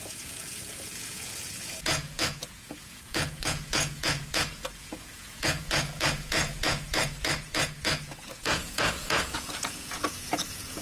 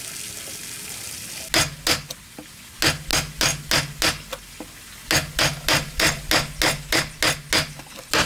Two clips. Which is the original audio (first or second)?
second